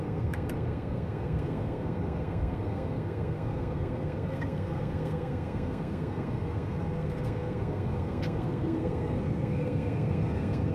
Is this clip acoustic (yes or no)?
no